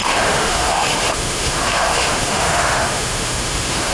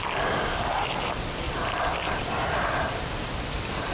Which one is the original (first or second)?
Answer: second